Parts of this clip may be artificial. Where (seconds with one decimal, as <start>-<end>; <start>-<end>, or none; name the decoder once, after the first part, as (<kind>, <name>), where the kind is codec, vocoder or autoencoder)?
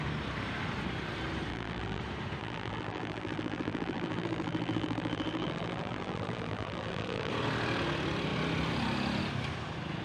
1.5-2.0 (vocoder, BigVGAN v2); 2.4-7.3